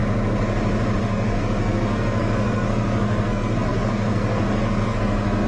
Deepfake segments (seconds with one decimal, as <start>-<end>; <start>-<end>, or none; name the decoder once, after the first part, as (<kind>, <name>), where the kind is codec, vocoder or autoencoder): 1.0-5.5 (codec, SNAC)